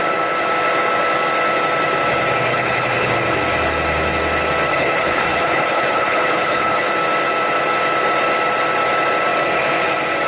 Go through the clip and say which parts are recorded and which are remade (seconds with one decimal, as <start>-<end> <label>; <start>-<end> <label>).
0.0-2.5 recorded; 2.5-3.1 remade; 3.1-4.7 recorded; 4.7-6.9 remade; 6.9-10.3 recorded